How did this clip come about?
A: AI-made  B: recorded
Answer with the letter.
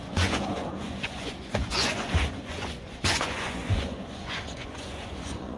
A